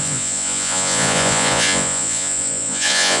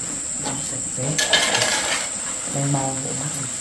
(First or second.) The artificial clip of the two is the first